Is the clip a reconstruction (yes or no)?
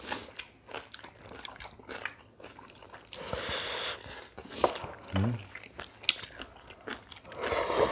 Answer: no